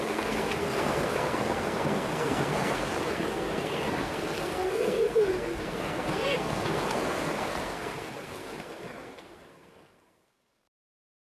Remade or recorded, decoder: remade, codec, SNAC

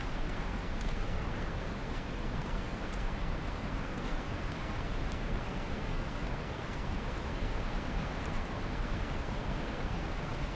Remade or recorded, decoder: remade, codec, SNAC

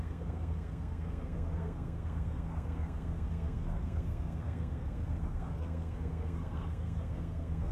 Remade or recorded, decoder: remade, codec, SNAC